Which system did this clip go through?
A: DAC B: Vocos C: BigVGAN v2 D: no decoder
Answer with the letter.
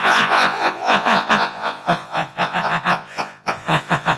B